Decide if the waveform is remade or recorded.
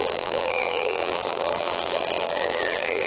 remade